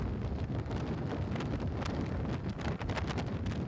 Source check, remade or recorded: recorded